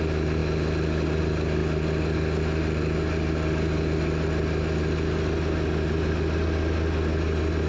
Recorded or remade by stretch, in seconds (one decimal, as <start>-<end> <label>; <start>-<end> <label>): 0.0-7.7 recorded